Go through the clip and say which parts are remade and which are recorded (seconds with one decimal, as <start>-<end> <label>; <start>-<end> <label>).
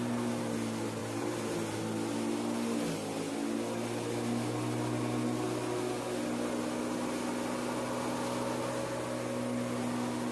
0.0-1.0 recorded; 1.0-1.8 remade; 1.8-10.3 recorded